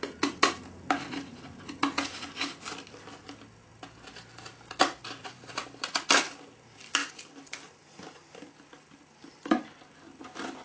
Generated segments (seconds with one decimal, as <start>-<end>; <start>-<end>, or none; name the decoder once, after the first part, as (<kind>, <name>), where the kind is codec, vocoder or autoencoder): 5.0-5.8 (vocoder, BigVGAN v2); 7.0-9.7